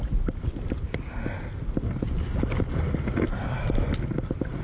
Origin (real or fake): real